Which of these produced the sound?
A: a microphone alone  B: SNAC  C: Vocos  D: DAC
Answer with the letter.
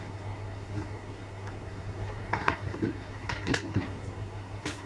B